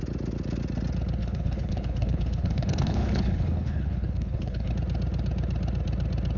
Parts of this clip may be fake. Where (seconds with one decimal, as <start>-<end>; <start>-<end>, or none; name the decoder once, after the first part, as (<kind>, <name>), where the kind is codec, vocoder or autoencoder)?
1.2-4.7 (codec, HILCodec)